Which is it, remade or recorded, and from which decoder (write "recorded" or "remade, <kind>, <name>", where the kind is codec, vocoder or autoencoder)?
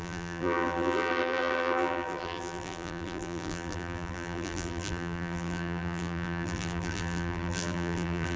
remade, vocoder, BigVGAN v2